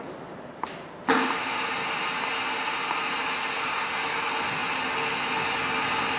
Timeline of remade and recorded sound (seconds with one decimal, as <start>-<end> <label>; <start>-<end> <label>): 0.0-6.2 recorded